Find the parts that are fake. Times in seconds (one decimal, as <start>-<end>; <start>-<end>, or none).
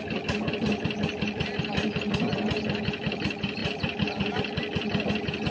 none